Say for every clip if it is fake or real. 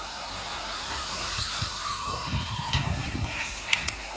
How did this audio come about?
fake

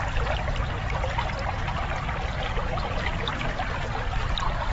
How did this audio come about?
real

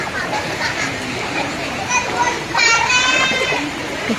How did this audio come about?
fake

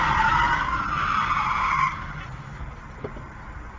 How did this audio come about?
real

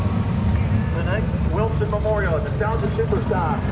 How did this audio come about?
real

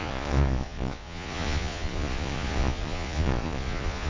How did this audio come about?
fake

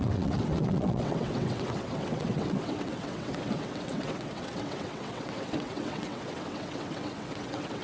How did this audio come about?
fake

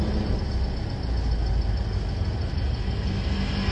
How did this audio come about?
real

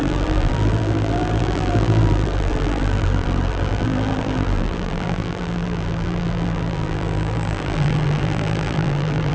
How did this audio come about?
fake